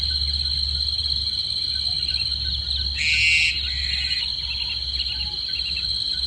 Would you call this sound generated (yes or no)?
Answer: no